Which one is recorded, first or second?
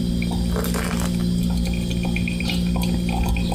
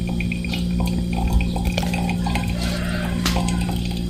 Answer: first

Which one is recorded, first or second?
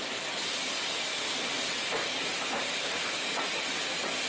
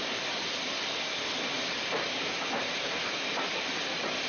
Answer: first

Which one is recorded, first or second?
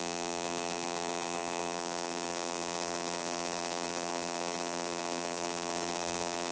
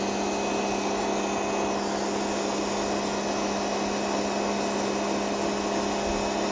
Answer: second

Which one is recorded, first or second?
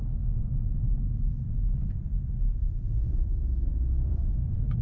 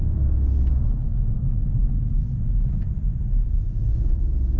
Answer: second